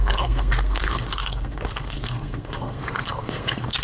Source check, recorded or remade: remade